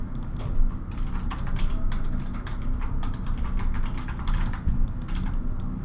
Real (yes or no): yes